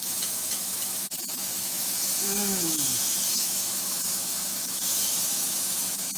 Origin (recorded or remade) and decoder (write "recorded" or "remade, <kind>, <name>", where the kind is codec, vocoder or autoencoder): remade, autoencoder, DAC-VAE